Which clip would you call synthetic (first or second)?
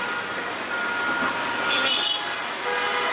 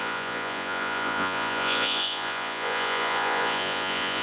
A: second